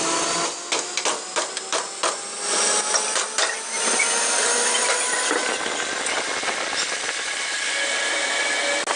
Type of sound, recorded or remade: recorded